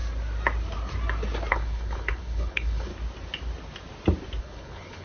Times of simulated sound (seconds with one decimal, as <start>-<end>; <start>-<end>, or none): 1.5-2.9; 4.4-5.0

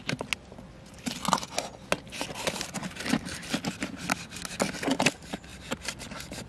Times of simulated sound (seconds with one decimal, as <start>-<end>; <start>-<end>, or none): none

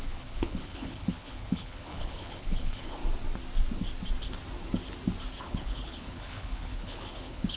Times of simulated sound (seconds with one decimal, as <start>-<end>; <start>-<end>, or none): 0.0-3.0; 5.4-7.6

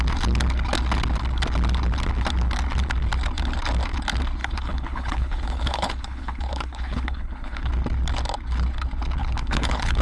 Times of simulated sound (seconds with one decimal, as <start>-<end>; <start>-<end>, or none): 4.4-7.7; 9.2-10.0

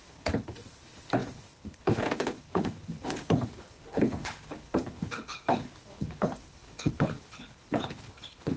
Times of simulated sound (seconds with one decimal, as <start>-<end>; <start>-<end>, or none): 0.0-8.6

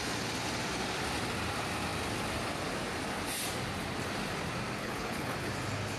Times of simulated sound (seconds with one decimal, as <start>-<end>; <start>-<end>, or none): 4.8-5.5

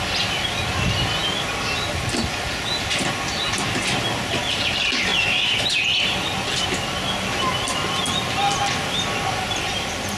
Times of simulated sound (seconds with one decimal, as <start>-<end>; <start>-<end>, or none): none